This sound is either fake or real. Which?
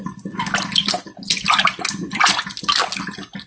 real